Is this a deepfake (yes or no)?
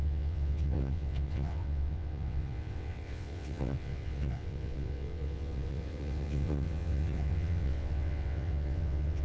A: yes